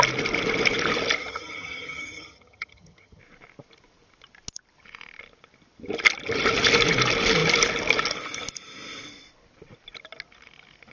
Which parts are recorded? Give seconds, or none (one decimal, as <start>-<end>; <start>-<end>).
0.0-1.2; 3.2-10.9